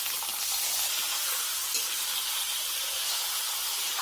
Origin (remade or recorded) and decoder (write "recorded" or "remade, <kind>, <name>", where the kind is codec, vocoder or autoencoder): recorded